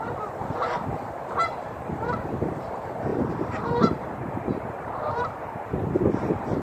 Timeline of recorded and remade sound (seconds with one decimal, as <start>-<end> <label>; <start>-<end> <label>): 0.0-6.6 remade